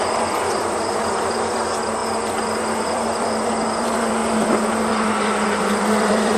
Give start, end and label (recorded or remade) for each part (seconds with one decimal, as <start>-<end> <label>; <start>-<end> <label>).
0.0-2.0 remade; 2.0-2.8 recorded; 2.8-4.2 remade; 4.2-4.9 recorded; 4.9-6.4 remade